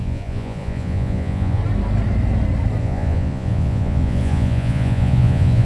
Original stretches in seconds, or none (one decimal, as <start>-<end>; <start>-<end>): 1.6-2.8